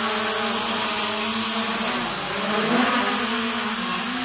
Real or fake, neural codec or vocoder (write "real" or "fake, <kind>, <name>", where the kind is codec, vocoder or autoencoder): real